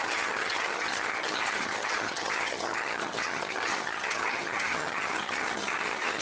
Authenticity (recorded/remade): remade